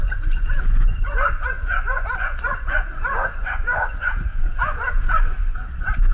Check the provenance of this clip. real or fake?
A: fake